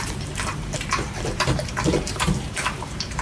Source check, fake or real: fake